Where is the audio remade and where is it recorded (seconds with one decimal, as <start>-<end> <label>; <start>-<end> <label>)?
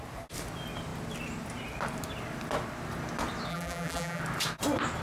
0.0-3.5 recorded; 3.5-4.2 remade; 4.2-5.0 recorded